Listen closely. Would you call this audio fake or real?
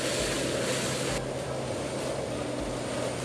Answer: real